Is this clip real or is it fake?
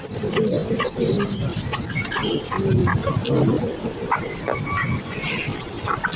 real